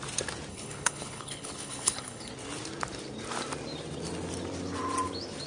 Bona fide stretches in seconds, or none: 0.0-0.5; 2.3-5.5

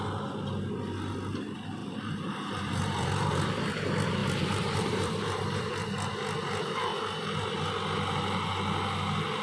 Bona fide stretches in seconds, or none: 0.0-1.8; 3.7-4.2; 5.7-9.4

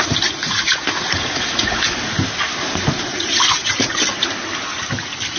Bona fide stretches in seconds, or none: 0.0-0.4; 1.8-3.1; 4.0-5.4

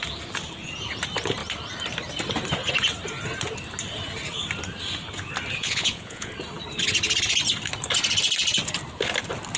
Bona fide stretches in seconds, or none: 0.0-5.6; 6.3-9.6

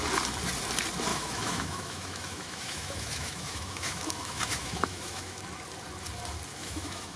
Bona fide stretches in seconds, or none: 0.0-1.1; 5.4-6.5